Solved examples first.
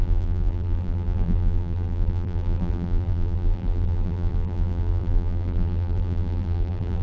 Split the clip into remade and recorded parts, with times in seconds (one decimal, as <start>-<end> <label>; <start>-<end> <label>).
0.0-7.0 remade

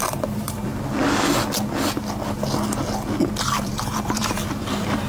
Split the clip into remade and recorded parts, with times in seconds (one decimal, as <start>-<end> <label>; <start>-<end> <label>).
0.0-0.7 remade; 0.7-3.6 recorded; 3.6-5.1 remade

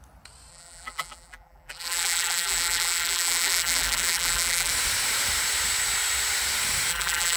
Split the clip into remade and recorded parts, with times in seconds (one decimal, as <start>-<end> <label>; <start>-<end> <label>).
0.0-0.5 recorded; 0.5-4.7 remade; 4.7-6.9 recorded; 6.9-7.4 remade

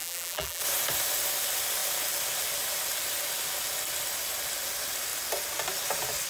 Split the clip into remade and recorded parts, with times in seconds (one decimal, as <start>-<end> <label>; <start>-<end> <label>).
0.0-0.6 remade; 0.6-6.3 recorded

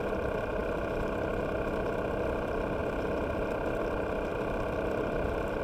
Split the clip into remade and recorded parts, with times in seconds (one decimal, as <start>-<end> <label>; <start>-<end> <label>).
0.0-5.6 recorded